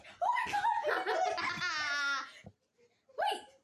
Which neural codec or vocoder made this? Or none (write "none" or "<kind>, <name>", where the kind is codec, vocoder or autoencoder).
none